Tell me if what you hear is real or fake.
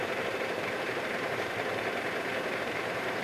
fake